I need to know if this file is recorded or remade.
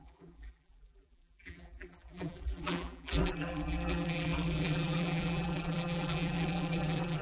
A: remade